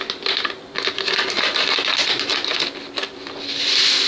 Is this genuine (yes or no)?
yes